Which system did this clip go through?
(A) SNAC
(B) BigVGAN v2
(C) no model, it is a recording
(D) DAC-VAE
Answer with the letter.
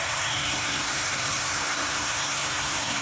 A